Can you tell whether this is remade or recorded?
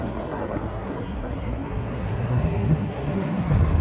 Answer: remade